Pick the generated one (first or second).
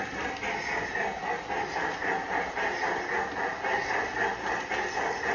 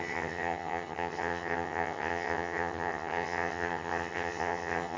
second